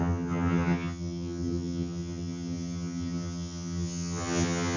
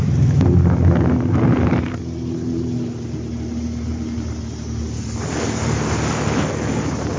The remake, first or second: first